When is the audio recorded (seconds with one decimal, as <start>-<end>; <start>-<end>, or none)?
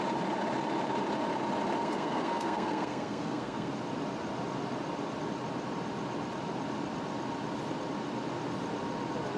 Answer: 0.0-1.8; 3.7-9.4